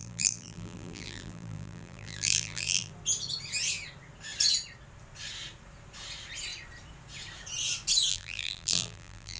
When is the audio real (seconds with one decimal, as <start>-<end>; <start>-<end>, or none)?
2.9-8.1